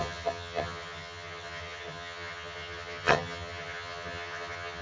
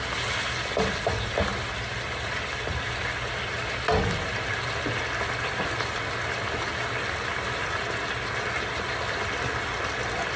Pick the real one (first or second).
second